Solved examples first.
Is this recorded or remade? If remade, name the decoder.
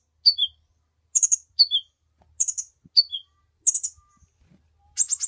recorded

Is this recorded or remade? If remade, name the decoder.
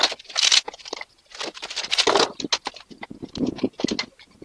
recorded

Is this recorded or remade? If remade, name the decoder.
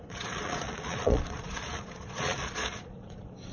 remade, vocoder, Vocos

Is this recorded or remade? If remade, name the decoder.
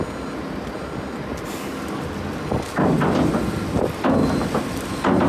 recorded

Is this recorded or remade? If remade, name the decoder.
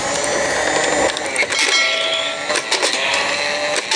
recorded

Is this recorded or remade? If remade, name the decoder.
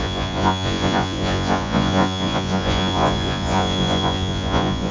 remade, vocoder, Vocos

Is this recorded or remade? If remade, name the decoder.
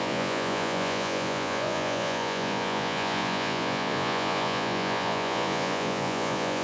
remade, vocoder, Vocos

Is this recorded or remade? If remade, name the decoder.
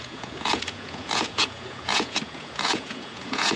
remade, vocoder, Vocos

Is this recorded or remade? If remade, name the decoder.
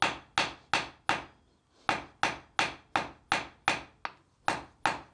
recorded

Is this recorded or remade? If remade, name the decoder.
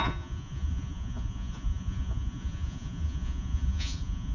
remade, vocoder, Vocos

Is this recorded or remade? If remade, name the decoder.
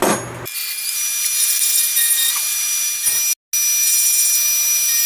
recorded